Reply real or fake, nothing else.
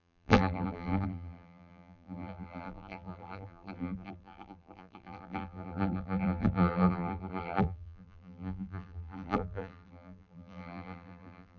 fake